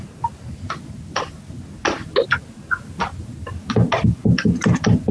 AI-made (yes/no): no